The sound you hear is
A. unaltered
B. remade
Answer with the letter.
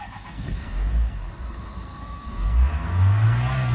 B